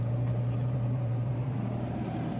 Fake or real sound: fake